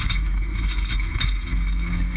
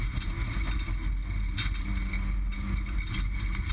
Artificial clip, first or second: first